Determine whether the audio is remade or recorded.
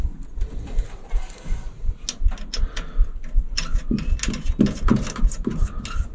recorded